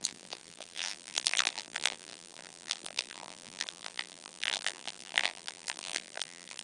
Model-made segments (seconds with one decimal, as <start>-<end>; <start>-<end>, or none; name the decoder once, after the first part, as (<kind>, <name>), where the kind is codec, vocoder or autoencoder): 0.0-6.6 (vocoder, BigVGAN v2)